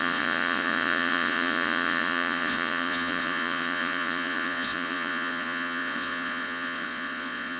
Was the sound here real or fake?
fake